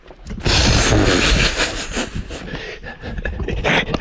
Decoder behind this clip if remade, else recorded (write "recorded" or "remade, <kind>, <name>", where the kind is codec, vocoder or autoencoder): recorded